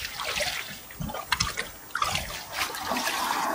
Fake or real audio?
real